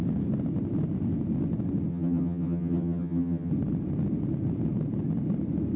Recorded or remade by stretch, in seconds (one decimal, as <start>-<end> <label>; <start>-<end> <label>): 0.0-1.9 recorded; 1.9-3.5 remade; 3.5-5.8 recorded